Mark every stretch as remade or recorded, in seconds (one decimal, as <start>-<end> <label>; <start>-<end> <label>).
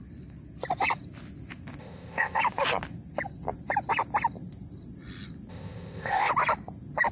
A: 0.0-1.8 recorded; 1.8-2.4 remade; 2.4-5.5 recorded; 5.5-6.3 remade; 6.3-7.1 recorded